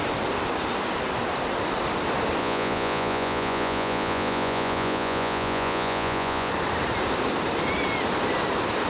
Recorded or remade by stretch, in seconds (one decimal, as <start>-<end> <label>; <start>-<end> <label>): 0.0-2.4 recorded; 2.4-6.5 remade; 6.5-8.9 recorded